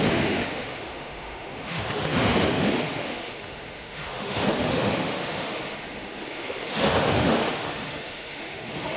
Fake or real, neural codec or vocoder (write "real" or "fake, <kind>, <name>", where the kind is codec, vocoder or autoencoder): fake, autoencoder, DAC-VAE